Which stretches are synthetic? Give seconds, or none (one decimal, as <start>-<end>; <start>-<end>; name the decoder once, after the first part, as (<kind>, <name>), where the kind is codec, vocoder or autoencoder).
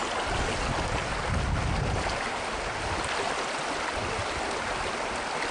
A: none